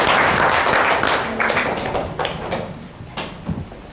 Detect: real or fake real